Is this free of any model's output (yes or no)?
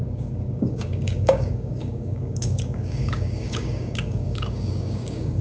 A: no